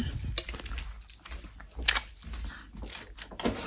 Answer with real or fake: real